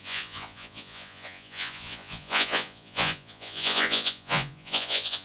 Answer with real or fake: fake